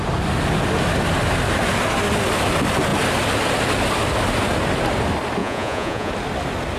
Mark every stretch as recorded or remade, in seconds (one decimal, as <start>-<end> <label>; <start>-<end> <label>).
0.0-5.4 recorded; 5.4-6.1 remade; 6.1-6.8 recorded